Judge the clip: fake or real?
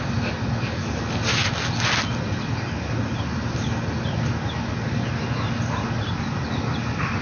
real